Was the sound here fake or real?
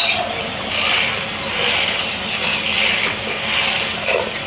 fake